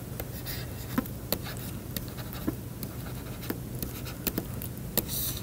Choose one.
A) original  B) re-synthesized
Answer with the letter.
A